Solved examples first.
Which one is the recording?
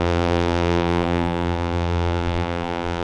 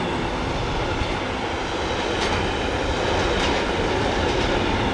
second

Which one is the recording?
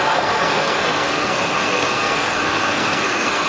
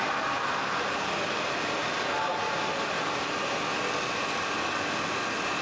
second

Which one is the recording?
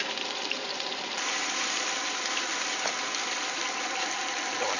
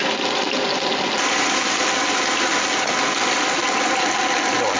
second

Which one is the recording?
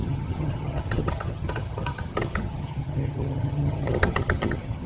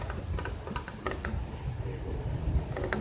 second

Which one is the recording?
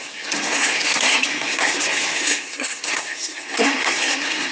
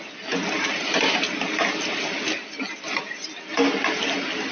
second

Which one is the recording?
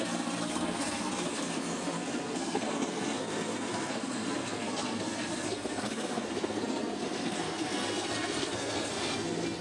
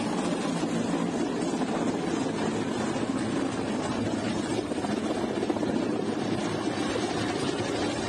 second